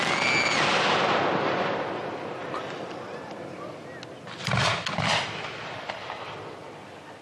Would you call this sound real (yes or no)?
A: yes